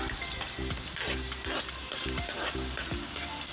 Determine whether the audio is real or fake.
real